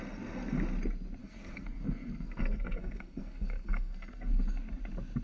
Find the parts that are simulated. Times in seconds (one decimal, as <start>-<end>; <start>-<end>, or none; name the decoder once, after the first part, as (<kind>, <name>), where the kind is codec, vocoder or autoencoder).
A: 1.2-4.3 (codec, SNAC)

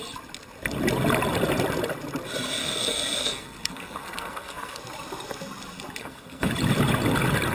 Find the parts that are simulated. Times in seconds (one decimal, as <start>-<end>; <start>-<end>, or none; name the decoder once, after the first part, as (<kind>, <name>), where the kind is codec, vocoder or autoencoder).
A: 2.6-4.8 (codec, SNAC); 6.0-6.5

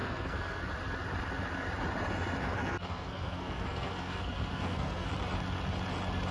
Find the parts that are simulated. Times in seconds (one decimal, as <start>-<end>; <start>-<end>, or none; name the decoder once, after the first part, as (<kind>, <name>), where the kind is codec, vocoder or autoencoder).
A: 0.0-0.7 (codec, SNAC); 2.4-5.1

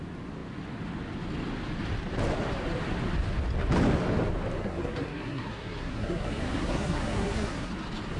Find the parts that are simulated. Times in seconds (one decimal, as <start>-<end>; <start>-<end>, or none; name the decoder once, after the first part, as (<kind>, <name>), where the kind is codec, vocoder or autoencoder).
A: 4.6-7.7 (codec, SNAC)